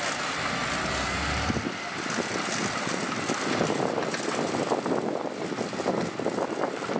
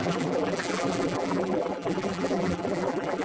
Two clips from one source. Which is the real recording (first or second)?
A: first